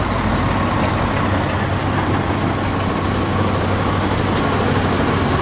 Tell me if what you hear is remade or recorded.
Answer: recorded